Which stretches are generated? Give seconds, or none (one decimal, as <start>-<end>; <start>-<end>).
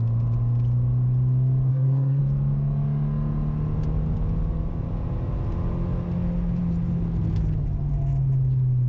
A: 1.7-2.2